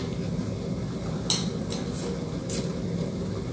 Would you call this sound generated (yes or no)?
no